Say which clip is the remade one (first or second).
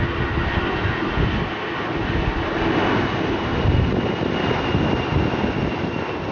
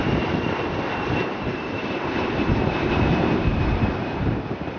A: second